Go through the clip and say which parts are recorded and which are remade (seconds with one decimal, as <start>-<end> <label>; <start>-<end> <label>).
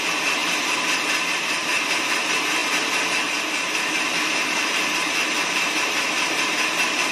0.0-1.7 remade; 1.7-2.2 recorded; 2.2-7.1 remade